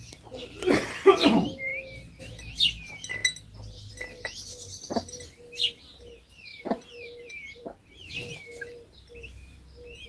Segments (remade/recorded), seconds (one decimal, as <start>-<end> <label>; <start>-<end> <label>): 0.0-6.5 recorded; 6.5-8.1 remade; 8.1-10.1 recorded